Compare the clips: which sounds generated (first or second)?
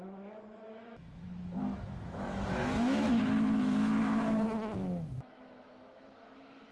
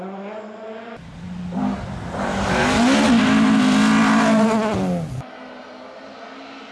first